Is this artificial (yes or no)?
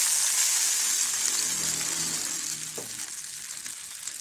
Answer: no